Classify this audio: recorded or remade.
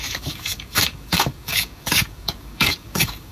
remade